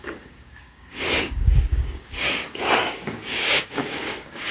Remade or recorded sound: remade